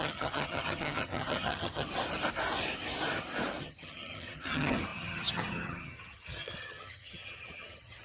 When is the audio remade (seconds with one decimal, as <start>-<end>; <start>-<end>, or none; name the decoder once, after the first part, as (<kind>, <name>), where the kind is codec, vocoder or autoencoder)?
0.0-1.9 (vocoder, HiFi-GAN); 3.6-8.0